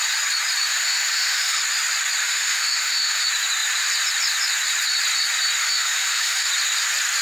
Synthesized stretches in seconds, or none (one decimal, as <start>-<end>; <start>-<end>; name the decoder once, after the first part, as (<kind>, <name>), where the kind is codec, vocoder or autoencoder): 0.7-1.6 (autoencoder, DAC-VAE); 2.2-3.2; 5.6-6.5

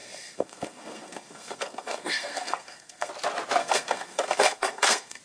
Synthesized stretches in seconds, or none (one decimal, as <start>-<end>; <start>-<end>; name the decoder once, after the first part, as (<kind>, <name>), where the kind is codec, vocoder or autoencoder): 0.0-3.1 (codec, SNAC); 3.6-5.2

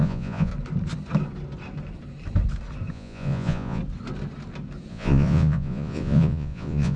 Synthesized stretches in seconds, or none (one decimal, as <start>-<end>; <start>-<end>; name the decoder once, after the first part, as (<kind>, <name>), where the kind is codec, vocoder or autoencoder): 0.0-0.5 (vocoder, Vocos); 2.9-3.8; 4.9-7.0

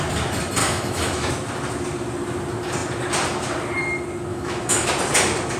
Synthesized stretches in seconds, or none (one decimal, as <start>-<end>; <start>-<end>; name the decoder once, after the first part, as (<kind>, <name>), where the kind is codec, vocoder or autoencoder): 0.6-1.3 (autoencoder, DAC-VAE); 4.3-4.9

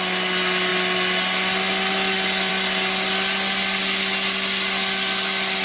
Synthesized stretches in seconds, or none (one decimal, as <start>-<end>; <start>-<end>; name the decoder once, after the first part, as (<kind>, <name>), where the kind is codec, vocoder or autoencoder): none

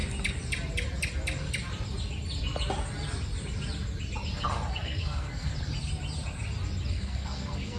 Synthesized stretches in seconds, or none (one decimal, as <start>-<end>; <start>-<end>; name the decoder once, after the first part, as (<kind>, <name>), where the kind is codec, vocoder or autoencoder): 4.7-5.5 (codec, SNAC); 6.9-7.8

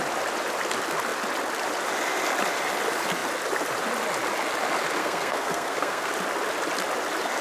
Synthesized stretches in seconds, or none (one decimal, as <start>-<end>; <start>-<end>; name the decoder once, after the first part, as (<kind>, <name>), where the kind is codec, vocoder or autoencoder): 5.0-6.1 (codec, SNAC)

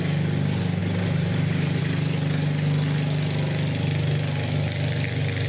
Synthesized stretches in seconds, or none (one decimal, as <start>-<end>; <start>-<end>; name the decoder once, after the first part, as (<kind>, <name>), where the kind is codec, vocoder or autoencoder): 0.8-1.8 (vocoder, BigVGAN v2)